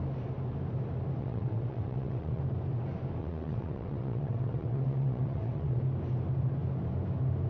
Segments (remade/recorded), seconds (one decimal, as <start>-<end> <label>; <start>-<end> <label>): 0.0-1.2 recorded; 1.2-2.4 remade; 2.4-3.2 recorded; 3.2-5.8 remade; 5.8-7.5 recorded